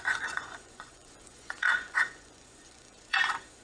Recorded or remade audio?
remade